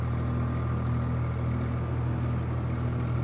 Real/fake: real